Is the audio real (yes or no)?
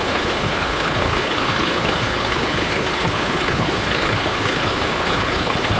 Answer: no